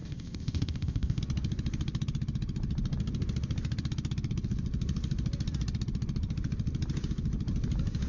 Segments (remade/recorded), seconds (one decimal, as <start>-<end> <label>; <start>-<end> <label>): 0.0-1.2 remade; 1.2-8.1 recorded